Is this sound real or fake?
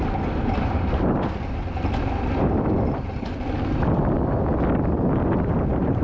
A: real